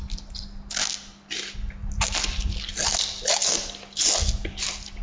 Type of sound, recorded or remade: recorded